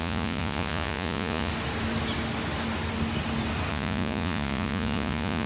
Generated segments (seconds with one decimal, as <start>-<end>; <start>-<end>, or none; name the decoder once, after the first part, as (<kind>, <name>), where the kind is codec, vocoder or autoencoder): 0.0-1.5 (vocoder, Vocos); 3.7-5.5